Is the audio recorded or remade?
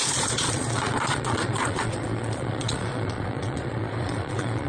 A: remade